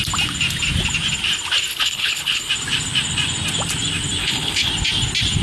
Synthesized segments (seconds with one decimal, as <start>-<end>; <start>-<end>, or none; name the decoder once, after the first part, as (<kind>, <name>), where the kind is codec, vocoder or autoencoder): 1.7-2.5 (codec, HILCodec); 4.2-4.7